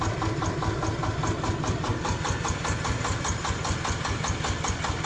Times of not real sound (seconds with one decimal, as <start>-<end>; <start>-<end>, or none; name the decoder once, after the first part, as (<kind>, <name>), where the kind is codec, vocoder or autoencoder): 1.9-4.2 (vocoder, BigVGAN v2)